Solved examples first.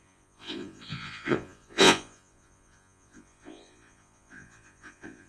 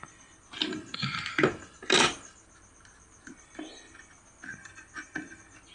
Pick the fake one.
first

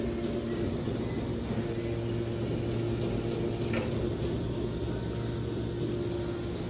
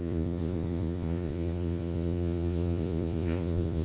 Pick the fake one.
second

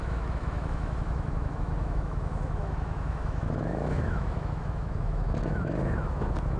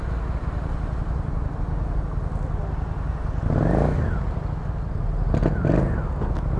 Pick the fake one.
first